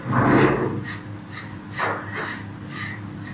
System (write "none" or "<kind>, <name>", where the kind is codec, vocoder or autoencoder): none